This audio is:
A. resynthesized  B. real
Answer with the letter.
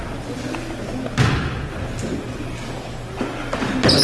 B